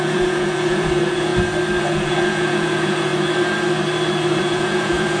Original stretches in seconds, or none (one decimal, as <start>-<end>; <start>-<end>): 1.3-1.8; 3.1-4.4